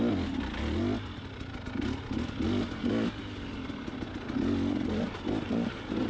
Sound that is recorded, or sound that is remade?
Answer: recorded